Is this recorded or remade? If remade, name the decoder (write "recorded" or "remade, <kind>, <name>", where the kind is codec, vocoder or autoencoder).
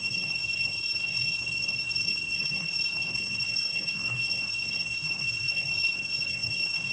remade, codec, SNAC